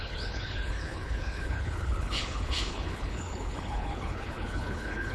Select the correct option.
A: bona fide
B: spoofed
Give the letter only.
B